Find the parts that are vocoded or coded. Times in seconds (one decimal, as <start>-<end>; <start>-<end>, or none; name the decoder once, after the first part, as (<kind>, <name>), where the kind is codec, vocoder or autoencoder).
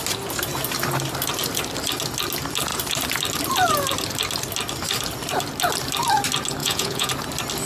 6.6-7.1 (vocoder, Vocos)